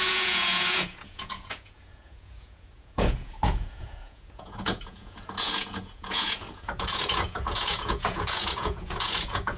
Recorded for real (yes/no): no